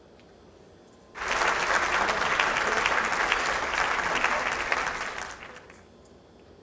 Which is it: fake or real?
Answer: real